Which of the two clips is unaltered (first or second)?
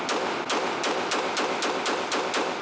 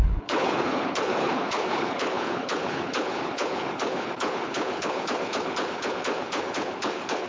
first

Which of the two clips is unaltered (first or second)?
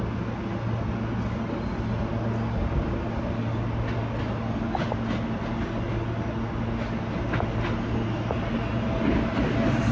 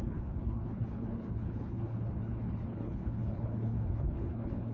first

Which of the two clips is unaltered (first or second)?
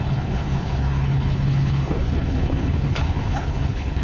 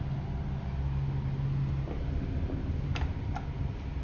second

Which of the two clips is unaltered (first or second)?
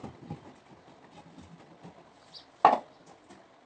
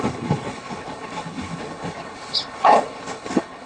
first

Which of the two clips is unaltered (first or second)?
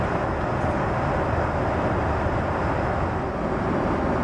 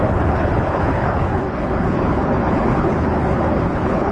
first